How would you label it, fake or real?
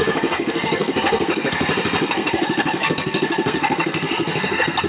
fake